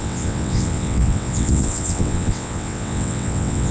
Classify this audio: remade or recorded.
remade